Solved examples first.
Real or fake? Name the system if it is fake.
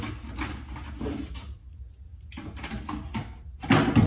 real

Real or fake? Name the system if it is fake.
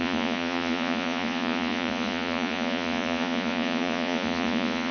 fake, vocoder, Vocos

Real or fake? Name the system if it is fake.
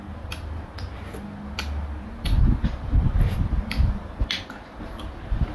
real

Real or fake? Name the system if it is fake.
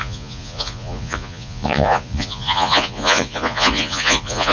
fake, vocoder, Vocos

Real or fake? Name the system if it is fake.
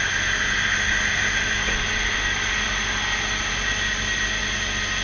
real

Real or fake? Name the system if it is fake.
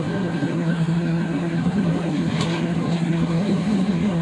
fake, codec, SNAC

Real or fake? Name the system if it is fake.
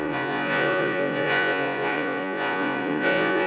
fake, vocoder, Vocos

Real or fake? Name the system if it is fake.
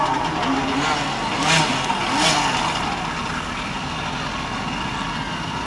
real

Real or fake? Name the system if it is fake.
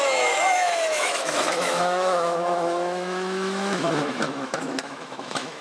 fake, autoencoder, DAC-VAE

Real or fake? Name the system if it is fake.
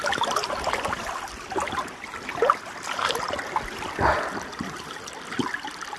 real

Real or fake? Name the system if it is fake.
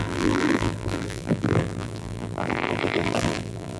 fake, vocoder, BigVGAN v2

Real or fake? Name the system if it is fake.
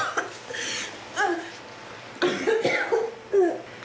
real